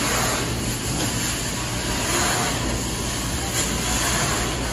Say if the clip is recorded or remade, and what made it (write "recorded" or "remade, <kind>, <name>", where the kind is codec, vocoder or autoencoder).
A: recorded